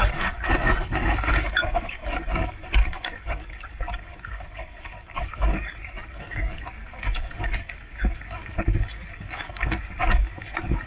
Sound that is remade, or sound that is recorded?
remade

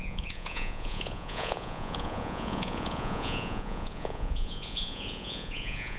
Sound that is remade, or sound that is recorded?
remade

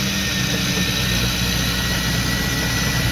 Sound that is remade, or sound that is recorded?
recorded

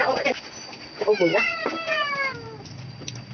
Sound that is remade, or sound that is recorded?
recorded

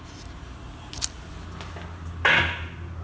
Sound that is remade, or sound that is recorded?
recorded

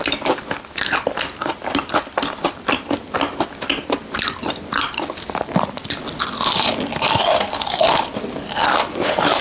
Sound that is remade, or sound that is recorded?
remade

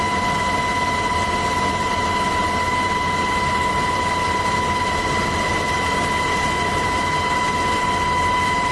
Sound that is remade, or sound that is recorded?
recorded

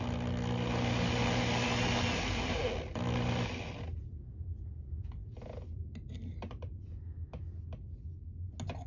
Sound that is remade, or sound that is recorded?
recorded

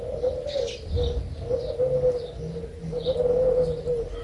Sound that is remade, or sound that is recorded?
recorded